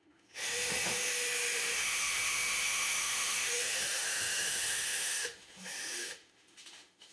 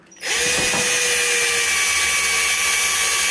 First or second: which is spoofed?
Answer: first